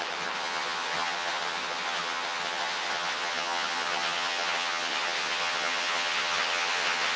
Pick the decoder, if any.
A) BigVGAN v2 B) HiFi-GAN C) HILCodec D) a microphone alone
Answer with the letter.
B